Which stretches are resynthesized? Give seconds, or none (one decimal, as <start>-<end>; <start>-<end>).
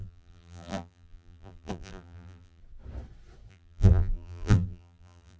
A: 0.0-2.6; 3.5-5.4